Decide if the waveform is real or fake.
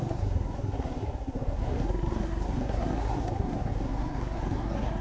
fake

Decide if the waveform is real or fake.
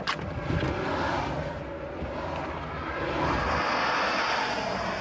real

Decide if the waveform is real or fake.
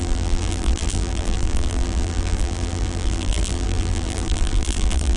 fake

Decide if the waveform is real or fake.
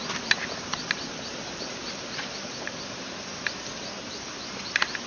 real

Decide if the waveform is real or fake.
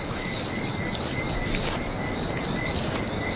real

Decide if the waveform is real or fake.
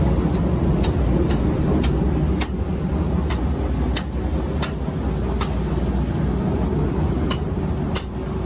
real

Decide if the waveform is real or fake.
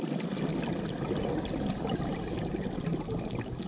real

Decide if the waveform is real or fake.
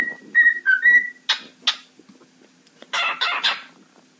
real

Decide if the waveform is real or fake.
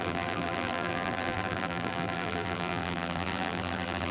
fake